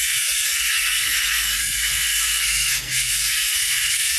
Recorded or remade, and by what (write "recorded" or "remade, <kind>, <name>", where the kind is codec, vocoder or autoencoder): remade, codec, SNAC